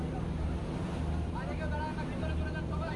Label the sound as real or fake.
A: real